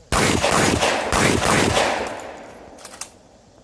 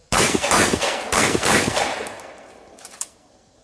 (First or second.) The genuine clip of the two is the first